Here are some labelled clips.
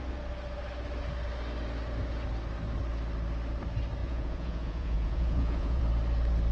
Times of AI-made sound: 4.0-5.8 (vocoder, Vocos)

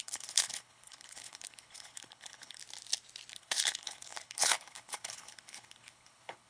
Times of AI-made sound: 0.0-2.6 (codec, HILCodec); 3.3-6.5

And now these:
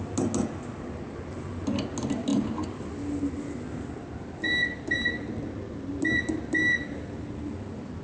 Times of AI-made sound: none

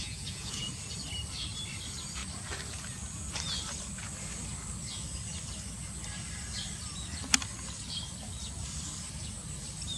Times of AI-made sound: 0.0-0.7 (vocoder, Vocos)

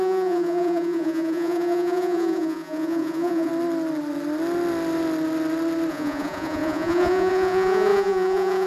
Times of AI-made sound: 0.0-3.5 (vocoder, Vocos); 5.9-8.7

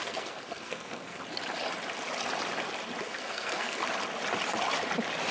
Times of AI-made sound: 0.0-1.2 (codec, SNAC); 3.0-3.8